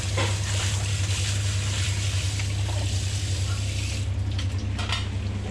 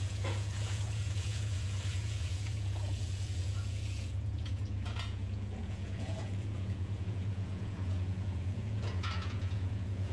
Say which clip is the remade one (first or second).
second